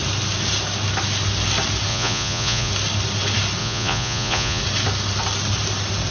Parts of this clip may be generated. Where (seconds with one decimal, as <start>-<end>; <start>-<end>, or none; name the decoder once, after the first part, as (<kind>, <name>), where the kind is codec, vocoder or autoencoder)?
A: 1.9-2.7 (vocoder, Vocos); 3.6-4.6